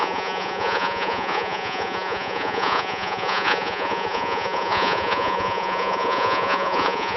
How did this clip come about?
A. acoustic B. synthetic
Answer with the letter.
B